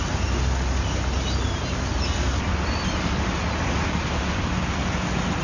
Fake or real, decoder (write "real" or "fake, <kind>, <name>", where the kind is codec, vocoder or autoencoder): real